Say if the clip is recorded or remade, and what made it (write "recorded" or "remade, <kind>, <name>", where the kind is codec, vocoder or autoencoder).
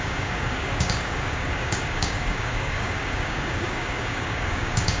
remade, codec, DAC